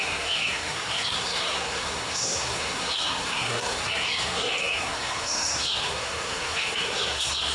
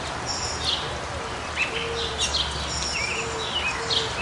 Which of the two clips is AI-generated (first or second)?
first